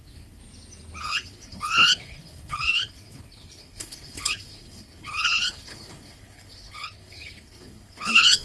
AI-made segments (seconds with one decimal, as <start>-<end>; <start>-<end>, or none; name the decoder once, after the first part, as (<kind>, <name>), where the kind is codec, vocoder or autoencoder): 0.0-0.4 (codec, HILCodec); 1.0-8.4